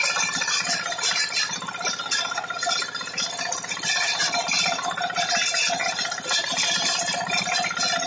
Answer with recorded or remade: recorded